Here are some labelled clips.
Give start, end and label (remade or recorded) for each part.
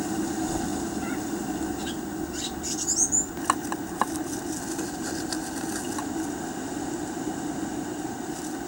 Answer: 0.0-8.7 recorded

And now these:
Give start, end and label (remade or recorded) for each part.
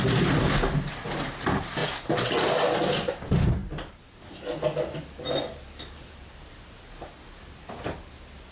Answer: 0.0-8.5 recorded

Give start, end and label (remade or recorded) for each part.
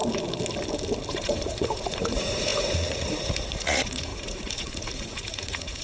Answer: 0.0-1.1 recorded; 1.1-5.8 remade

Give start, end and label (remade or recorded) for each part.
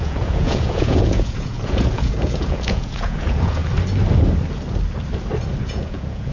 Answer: 0.0-3.6 remade; 3.6-5.6 recorded; 5.6-6.3 remade